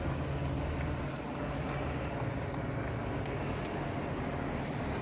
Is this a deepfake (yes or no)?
no